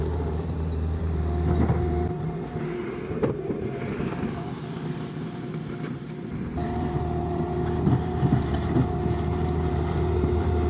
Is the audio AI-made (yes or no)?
yes